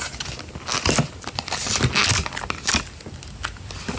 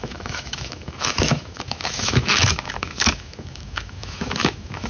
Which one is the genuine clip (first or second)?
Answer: first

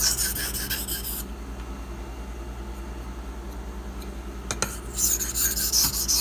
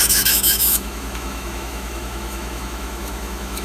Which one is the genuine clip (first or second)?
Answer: first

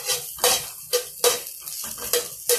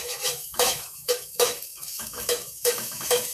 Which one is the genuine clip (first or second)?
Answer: first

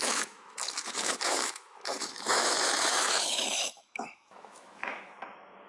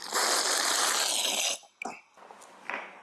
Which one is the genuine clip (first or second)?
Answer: second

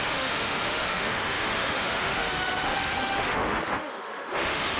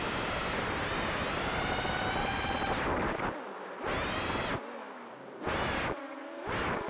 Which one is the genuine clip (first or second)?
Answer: second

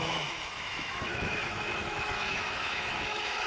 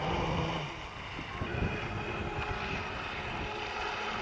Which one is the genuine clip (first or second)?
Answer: second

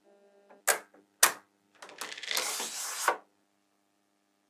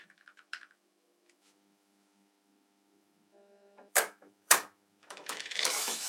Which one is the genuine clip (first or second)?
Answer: first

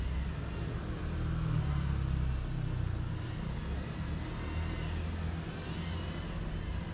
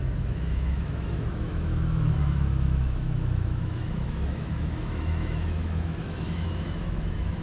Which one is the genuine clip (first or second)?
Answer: first